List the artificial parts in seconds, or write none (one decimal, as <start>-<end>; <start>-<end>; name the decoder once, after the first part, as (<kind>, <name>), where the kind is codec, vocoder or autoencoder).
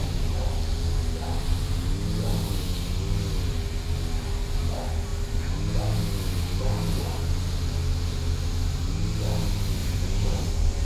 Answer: 9.8-10.4 (vocoder, Vocos)